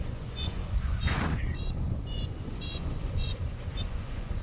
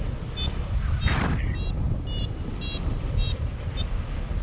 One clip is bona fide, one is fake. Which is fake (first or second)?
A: first